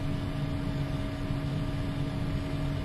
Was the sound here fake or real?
real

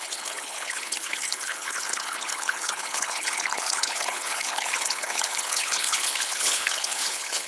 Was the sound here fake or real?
fake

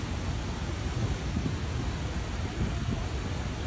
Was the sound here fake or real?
real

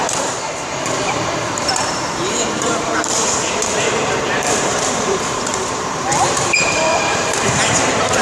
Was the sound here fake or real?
fake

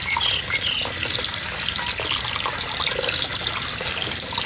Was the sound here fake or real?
real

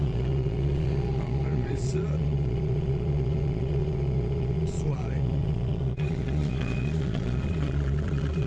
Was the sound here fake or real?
fake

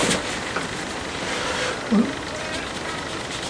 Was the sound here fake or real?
real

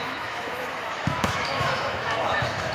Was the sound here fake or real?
fake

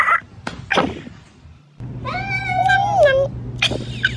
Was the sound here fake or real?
real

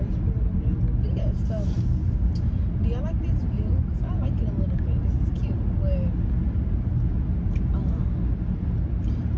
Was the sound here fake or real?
real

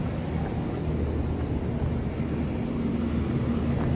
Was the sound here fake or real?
real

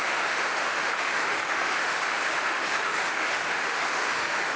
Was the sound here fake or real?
fake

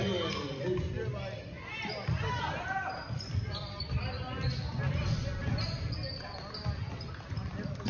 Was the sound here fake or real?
real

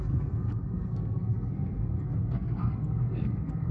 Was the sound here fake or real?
fake